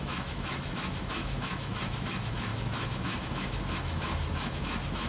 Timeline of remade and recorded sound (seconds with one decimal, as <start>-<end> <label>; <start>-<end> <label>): 0.0-5.1 remade